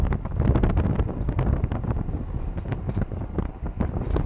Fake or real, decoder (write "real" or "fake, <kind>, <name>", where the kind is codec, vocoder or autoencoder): real